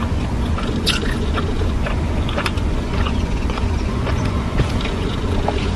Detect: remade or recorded remade